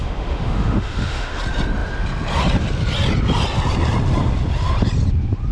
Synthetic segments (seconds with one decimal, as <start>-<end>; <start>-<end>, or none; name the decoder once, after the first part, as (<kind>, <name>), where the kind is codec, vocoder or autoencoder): 0.0-1.4 (autoencoder, DAC-VAE)